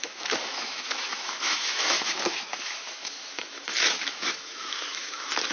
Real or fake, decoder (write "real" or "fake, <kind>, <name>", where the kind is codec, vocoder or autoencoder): fake, autoencoder, DAC-VAE